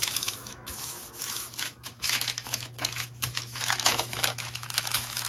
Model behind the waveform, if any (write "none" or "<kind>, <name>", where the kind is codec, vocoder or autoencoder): autoencoder, DAC-VAE